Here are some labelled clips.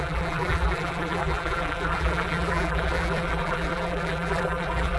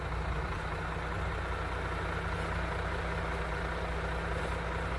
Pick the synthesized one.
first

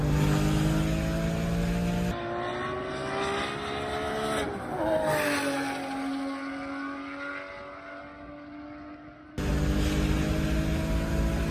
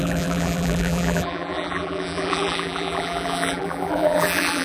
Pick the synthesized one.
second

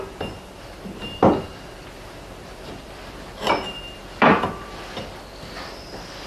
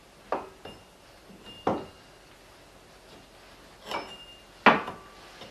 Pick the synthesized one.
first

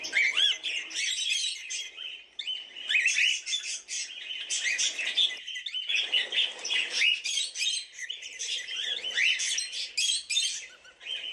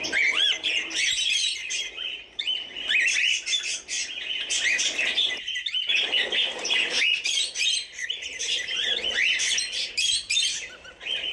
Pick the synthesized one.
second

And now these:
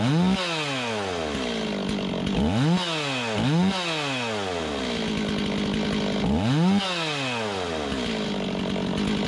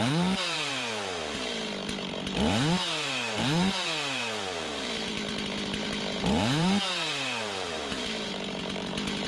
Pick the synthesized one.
second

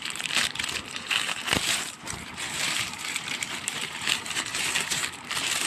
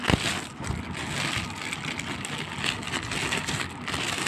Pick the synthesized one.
first